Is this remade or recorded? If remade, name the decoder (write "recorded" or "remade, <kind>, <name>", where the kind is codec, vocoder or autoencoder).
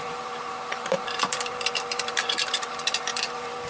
remade, vocoder, BigVGAN v2